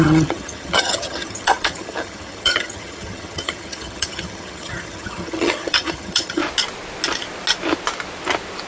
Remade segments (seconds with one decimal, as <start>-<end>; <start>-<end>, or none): 0.0-6.4